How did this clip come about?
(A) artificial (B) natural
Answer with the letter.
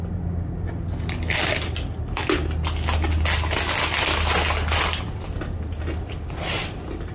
B